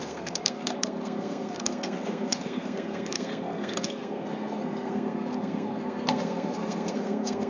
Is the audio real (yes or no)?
no